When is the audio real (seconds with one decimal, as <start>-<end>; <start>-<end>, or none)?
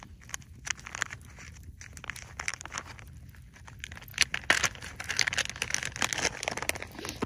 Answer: 0.0-2.5; 3.0-7.3